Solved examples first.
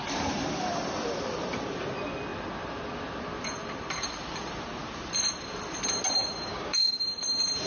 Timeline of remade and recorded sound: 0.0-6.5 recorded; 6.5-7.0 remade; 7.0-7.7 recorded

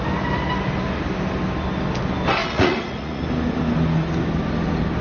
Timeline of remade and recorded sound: 0.0-2.4 recorded; 2.4-3.2 remade; 3.2-5.0 recorded

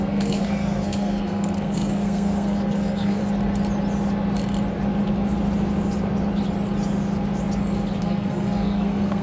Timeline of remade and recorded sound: 0.0-3.2 remade; 3.2-8.0 recorded; 8.0-9.2 remade

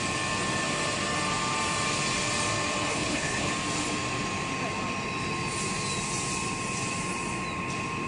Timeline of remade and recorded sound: 0.0-2.9 recorded; 2.9-3.5 remade; 3.5-8.1 recorded

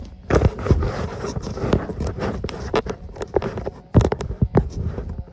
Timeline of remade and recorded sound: 0.0-1.9 recorded; 1.9-4.3 remade; 4.3-5.3 recorded